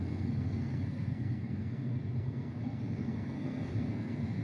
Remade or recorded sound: remade